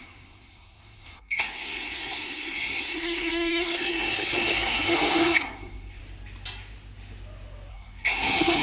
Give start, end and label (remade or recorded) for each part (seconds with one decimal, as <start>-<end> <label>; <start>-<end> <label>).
0.0-6.0 remade; 6.0-7.7 recorded; 7.7-8.6 remade